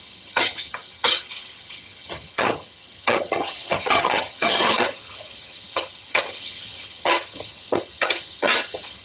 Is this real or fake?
fake